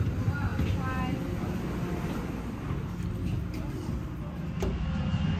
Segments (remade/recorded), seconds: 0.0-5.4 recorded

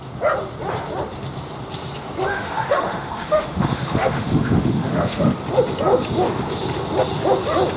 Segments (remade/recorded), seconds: 0.0-2.3 recorded; 2.3-5.2 remade; 5.2-7.8 recorded

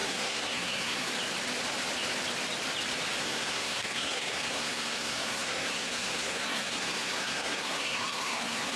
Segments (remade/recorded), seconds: 0.0-1.1 remade; 1.1-3.2 recorded; 3.2-8.8 remade

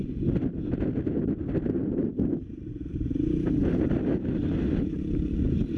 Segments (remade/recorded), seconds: 0.0-5.8 recorded

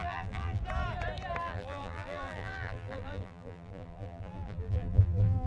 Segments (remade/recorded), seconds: 0.0-0.6 remade; 0.6-1.4 recorded; 1.4-5.5 remade

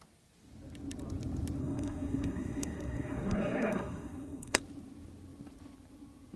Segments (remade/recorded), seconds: 0.0-1.6 recorded; 1.6-4.6 remade; 4.6-6.4 recorded

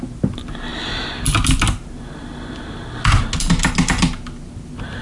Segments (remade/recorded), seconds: 0.0-5.0 recorded